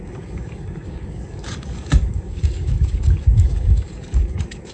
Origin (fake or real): fake